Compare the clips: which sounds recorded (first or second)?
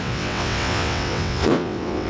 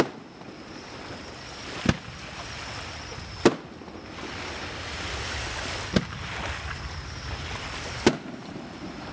second